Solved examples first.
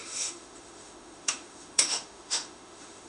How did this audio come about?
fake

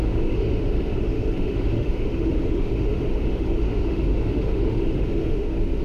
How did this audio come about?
fake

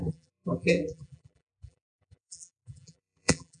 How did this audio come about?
fake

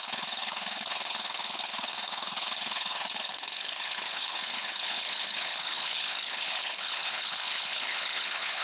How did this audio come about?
fake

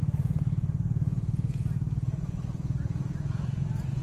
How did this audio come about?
fake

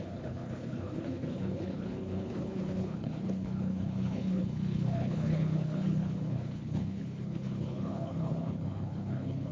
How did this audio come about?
fake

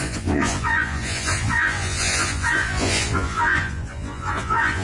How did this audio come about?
fake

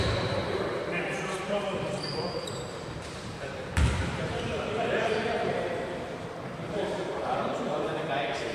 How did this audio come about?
fake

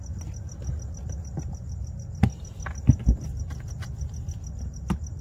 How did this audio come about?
real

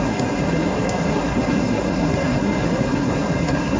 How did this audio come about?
fake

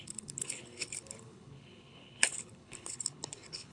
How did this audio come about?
fake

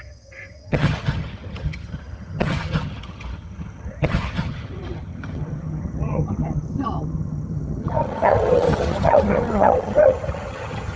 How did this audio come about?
fake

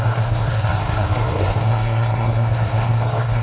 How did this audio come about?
fake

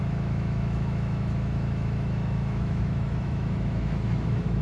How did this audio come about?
fake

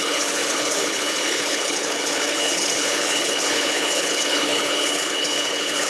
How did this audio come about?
fake